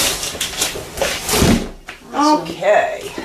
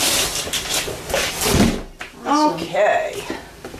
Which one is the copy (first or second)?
first